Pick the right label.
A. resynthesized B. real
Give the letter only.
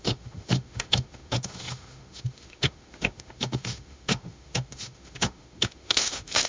A